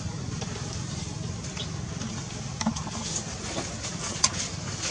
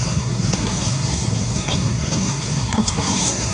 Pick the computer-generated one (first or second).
second